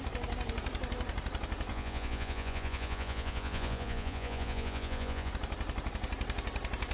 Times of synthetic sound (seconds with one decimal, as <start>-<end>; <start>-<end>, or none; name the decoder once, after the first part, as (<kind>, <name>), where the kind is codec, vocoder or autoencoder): 1.7-5.3 (vocoder, Vocos)

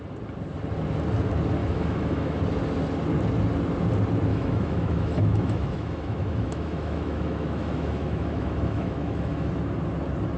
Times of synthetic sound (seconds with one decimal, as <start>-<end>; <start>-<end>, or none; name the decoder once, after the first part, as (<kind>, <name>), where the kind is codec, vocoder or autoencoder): 1.6-2.4 (autoencoder, DAC-VAE); 4.3-9.5

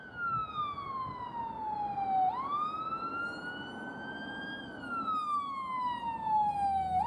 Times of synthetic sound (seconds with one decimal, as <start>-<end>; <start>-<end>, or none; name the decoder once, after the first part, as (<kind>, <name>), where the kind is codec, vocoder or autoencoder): none

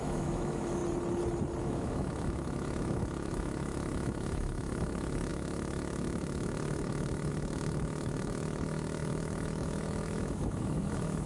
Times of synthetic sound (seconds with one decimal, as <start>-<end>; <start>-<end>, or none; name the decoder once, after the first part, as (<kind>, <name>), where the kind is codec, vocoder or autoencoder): 0.0-0.8 (autoencoder, DAC-VAE); 1.6-11.3

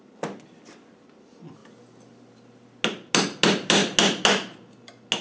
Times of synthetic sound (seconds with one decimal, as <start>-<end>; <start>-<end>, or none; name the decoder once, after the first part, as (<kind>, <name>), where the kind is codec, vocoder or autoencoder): none

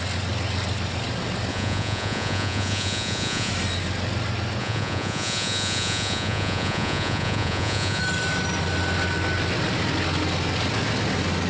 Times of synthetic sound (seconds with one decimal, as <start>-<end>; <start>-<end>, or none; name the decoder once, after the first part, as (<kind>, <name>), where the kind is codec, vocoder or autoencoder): 1.5-3.5 (vocoder, Vocos); 4.6-8.0